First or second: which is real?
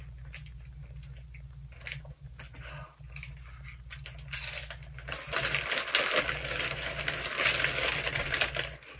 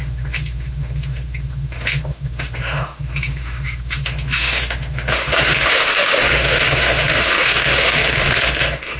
first